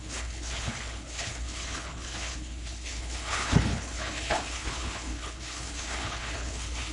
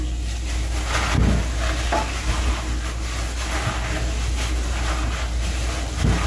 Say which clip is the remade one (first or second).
first